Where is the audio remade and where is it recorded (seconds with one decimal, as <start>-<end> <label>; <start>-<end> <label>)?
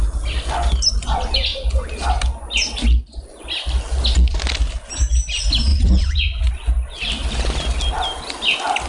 0.0-5.7 recorded; 5.7-6.5 remade; 6.5-8.9 recorded